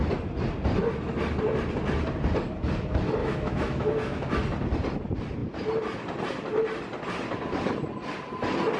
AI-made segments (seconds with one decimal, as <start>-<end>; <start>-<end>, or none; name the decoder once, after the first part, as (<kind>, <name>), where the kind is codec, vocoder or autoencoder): 3.2-4.3 (autoencoder, DAC-VAE)